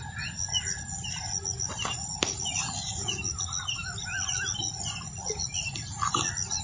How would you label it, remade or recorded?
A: recorded